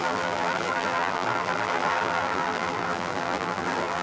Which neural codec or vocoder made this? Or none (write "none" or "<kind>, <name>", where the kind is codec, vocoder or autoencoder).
vocoder, BigVGAN v2